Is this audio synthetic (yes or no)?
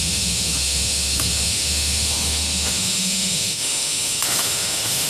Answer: yes